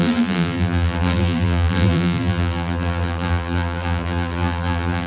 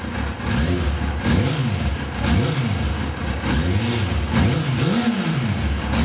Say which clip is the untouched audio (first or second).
second